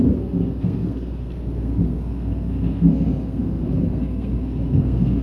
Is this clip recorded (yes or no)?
no